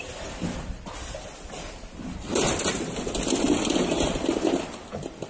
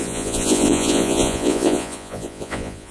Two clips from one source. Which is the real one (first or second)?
first